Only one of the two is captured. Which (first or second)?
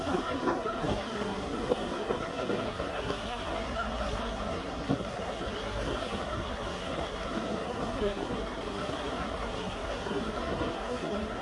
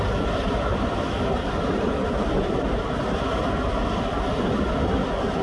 second